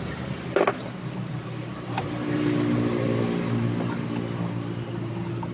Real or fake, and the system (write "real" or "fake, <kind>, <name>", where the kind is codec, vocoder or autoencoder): real